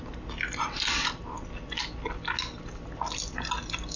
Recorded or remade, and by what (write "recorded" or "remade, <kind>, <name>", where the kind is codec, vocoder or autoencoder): recorded